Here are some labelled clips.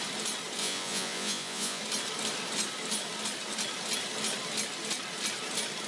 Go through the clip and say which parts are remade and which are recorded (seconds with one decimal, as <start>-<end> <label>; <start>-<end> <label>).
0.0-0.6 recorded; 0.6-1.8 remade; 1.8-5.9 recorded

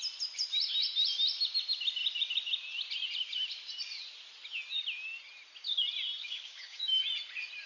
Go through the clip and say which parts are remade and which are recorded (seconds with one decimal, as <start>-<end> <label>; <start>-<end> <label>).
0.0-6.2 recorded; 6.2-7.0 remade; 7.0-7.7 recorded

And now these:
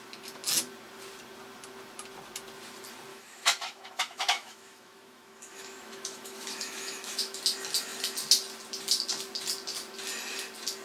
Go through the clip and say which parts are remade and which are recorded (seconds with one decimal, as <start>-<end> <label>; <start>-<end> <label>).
0.0-3.1 recorded; 3.1-7.4 remade; 7.4-10.8 recorded

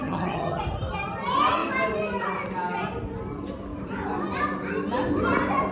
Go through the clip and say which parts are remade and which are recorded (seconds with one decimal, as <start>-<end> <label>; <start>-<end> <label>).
0.0-0.6 remade; 0.6-5.7 recorded

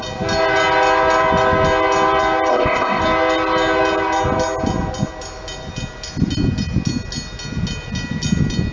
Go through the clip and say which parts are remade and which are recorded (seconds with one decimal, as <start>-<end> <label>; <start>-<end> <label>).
0.0-2.5 recorded; 2.5-3.0 remade; 3.0-8.7 recorded